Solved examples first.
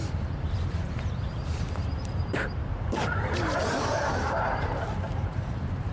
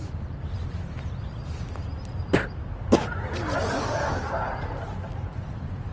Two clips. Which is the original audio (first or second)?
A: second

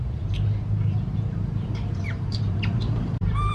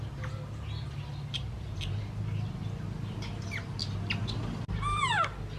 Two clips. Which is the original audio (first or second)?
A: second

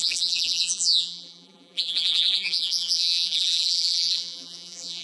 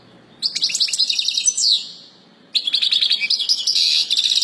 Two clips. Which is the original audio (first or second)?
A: second